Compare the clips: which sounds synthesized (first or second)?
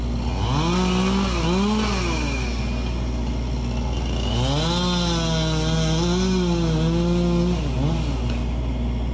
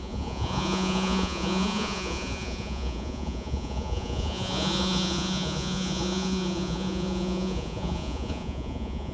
second